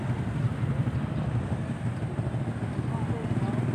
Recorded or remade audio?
recorded